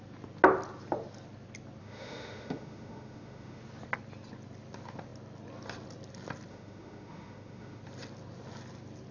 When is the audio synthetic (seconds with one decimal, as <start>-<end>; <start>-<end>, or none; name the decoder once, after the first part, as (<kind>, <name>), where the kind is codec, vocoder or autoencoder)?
1.8-3.6 (autoencoder, DAC-VAE); 6.5-7.8